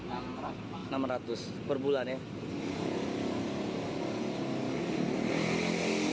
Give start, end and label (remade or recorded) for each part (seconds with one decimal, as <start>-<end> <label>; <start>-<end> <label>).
0.0-6.1 recorded

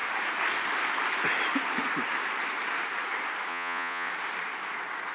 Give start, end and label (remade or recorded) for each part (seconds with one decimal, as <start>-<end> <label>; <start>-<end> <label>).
0.0-3.5 recorded; 3.5-4.1 remade; 4.1-5.1 recorded

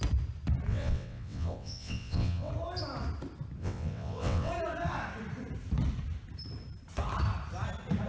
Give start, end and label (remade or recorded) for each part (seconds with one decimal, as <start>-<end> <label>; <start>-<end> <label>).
0.0-0.7 recorded; 0.7-2.5 remade; 2.5-3.6 recorded; 3.6-4.5 remade; 4.5-8.1 recorded